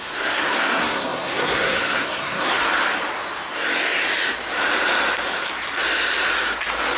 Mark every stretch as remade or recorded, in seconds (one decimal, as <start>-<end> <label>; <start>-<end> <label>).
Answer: 0.0-2.6 remade; 2.6-7.0 recorded